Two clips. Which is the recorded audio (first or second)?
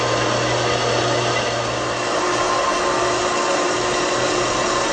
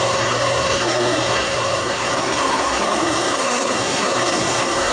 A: first